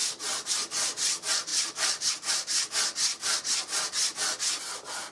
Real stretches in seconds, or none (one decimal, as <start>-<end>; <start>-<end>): 0.5-1.5; 2.1-5.1